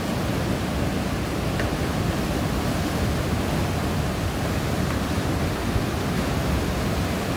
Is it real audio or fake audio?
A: real